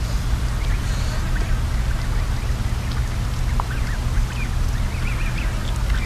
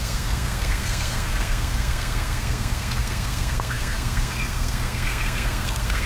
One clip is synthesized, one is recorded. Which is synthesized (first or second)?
second